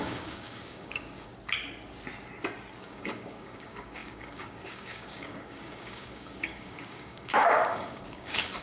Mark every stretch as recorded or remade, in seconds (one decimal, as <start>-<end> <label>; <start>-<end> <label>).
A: 0.0-1.3 remade; 1.3-2.8 recorded; 2.8-8.6 remade